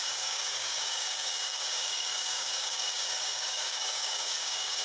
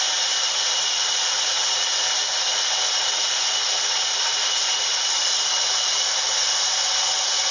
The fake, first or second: first